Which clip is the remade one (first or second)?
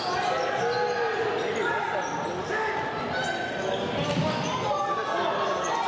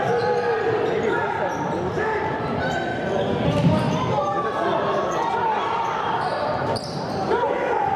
second